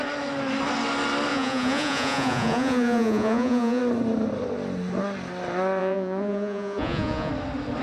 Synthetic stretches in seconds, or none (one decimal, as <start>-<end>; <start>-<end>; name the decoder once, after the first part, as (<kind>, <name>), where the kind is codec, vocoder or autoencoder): 1.3-3.8 (vocoder, Vocos); 5.8-7.3